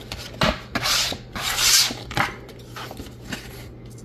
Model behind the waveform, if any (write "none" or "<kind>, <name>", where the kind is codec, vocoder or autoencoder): none